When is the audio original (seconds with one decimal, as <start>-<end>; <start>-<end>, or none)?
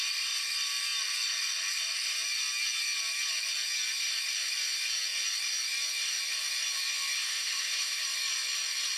0.0-7.3; 8.0-9.0